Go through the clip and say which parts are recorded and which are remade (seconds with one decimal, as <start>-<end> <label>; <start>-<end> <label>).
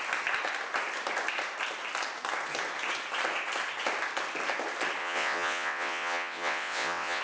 0.0-5.0 recorded; 5.0-7.2 remade